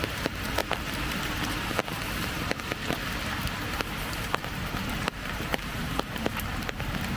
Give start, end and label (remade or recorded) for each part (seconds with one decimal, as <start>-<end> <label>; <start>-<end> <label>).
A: 0.0-0.6 remade; 0.6-4.3 recorded; 4.3-7.2 remade